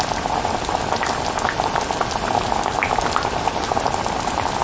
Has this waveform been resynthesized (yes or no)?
no